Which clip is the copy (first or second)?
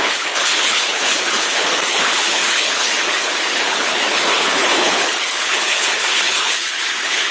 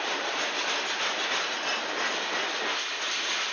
first